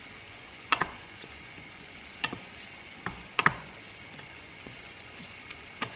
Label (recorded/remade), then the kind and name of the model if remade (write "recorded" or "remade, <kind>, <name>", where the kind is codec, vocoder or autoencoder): remade, vocoder, Vocos